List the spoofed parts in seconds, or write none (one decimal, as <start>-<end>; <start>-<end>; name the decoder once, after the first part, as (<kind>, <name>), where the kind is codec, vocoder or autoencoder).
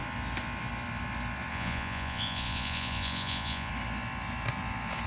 1.5-3.7 (vocoder, Vocos)